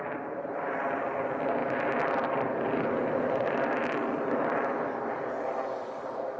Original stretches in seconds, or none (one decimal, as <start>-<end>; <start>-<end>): 0.0-6.4